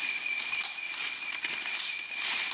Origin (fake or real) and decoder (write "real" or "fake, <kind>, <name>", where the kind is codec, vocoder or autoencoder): real